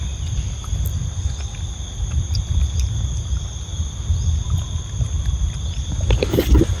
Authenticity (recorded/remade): recorded